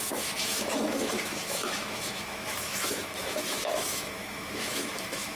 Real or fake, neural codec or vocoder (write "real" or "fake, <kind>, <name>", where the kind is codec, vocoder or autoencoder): fake, autoencoder, DAC-VAE